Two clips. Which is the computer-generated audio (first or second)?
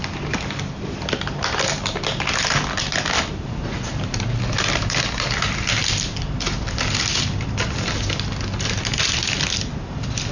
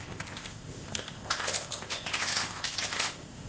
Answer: second